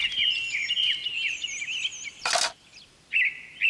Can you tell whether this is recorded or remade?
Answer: recorded